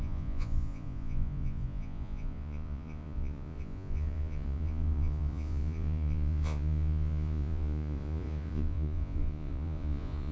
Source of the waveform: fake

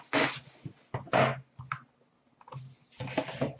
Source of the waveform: real